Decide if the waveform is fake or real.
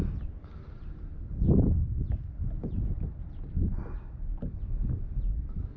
real